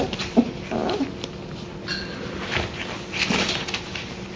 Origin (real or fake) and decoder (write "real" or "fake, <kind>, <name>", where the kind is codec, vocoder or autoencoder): real